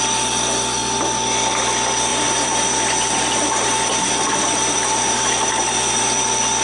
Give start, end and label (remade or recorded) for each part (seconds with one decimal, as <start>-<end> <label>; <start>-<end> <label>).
0.0-2.1 recorded; 2.1-5.9 remade; 5.9-6.6 recorded